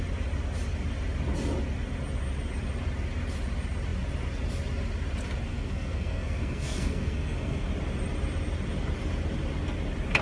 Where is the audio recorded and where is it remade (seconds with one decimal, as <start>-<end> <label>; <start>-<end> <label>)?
0.0-5.5 recorded; 5.5-7.7 remade; 7.7-10.2 recorded